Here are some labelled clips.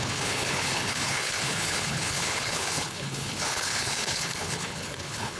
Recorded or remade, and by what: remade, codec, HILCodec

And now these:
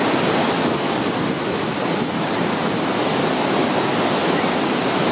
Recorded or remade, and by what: recorded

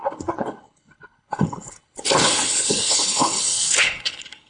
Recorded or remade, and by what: remade, codec, HILCodec